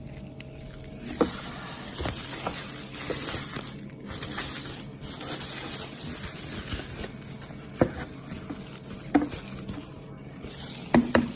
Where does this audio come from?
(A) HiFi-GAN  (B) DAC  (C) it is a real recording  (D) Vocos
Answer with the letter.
C